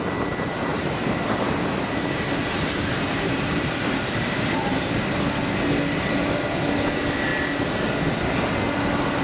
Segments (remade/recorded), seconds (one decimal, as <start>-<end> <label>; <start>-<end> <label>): 0.0-0.7 recorded; 0.7-4.9 remade; 4.9-9.2 recorded